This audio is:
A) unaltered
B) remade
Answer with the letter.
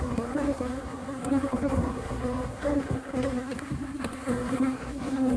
B